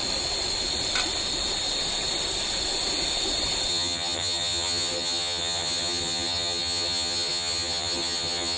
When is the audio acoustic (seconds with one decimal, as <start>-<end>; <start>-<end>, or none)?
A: 0.0-3.7

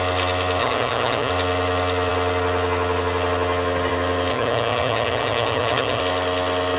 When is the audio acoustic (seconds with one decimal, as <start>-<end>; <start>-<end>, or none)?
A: 0.0-0.6; 1.3-4.3; 6.0-6.8

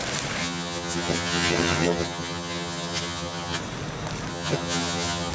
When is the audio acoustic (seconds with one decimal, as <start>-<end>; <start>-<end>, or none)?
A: 0.0-0.4; 3.6-4.3

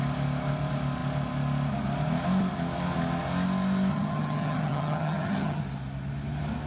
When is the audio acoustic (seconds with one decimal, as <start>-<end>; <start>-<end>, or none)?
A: 0.0-3.9; 5.6-6.7